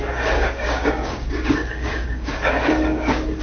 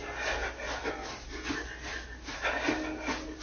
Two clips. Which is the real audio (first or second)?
second